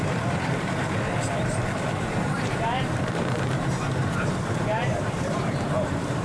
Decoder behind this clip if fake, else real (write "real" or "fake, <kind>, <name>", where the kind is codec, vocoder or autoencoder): fake, vocoder, BigVGAN v2